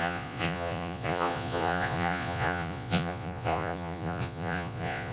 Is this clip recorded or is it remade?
remade